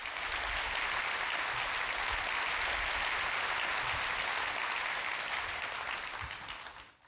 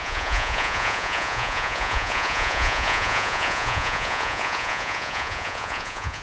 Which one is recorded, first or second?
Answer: first